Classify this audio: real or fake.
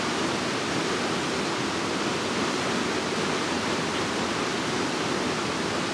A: real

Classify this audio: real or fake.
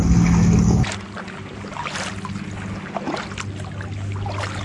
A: real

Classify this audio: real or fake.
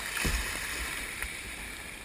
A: real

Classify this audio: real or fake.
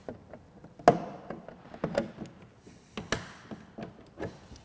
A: real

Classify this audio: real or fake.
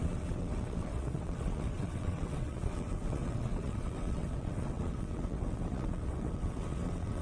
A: fake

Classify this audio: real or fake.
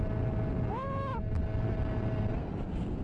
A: real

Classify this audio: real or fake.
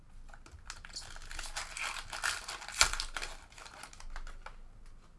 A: real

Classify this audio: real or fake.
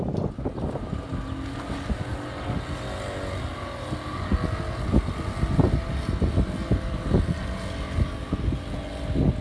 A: real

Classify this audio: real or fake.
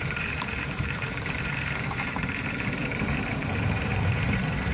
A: fake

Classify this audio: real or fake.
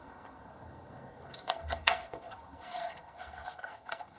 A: fake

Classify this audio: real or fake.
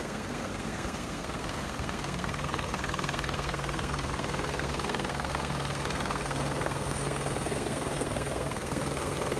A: fake